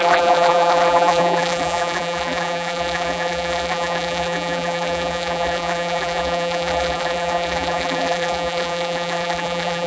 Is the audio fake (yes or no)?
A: yes